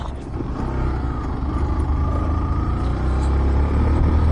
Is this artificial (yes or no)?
no